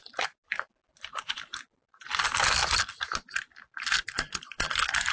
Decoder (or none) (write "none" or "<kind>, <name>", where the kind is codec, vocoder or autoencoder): none